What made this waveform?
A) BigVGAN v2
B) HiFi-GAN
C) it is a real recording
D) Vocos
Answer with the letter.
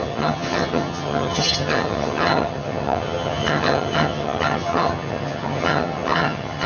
B